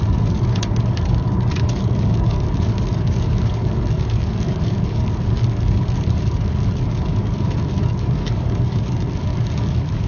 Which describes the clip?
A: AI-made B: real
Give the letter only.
A